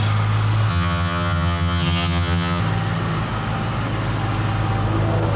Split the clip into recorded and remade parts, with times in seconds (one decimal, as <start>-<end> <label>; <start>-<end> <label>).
0.0-0.7 recorded; 0.7-2.6 remade; 2.6-5.4 recorded

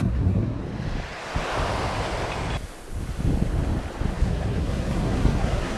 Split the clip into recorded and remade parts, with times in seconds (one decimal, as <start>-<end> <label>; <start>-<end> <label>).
0.0-0.6 remade; 0.6-4.1 recorded; 4.1-5.8 remade

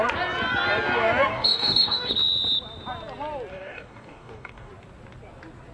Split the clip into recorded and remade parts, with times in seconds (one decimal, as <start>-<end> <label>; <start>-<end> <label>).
0.0-1.3 recorded; 1.3-2.1 remade; 2.1-3.5 recorded; 3.5-4.7 remade; 4.7-5.7 recorded